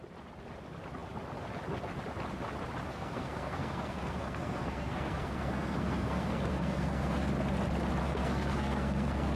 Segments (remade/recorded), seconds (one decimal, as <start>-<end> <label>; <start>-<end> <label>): 0.0-2.9 recorded; 2.9-7.3 remade; 7.3-8.0 recorded; 8.0-9.4 remade